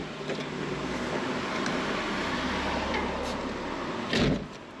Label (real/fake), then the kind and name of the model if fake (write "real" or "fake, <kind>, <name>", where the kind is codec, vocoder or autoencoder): real